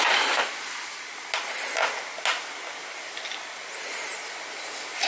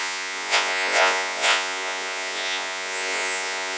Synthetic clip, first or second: second